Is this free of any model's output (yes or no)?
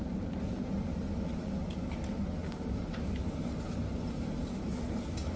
yes